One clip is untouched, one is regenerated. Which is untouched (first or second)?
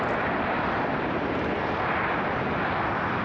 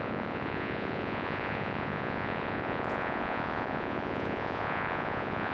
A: first